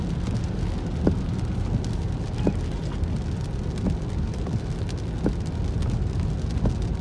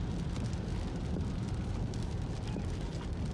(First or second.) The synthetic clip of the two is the second